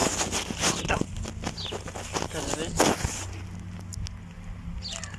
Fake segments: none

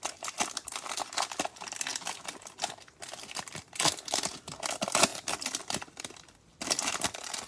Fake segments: none

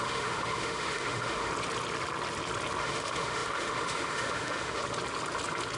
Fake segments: 0.0-1.5 (autoencoder, DAC-VAE); 2.8-4.8

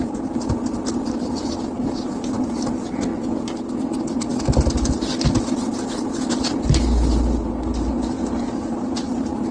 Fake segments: none

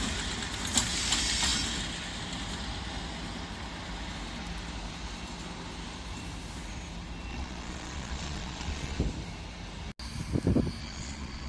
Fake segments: 7.3-9.0 (vocoder, Vocos); 10.8-11.5

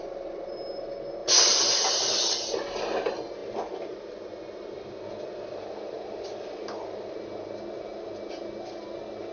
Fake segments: none

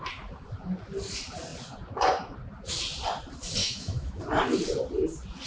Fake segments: 3.6-4.2 (autoencoder, DAC-VAE)

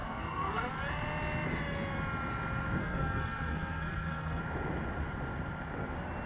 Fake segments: 0.0-0.7 (codec, SNAC); 2.8-4.4